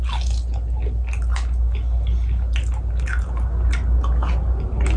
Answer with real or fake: real